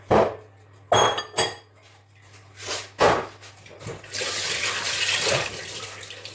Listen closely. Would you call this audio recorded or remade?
recorded